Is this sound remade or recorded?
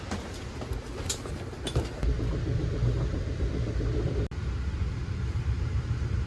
recorded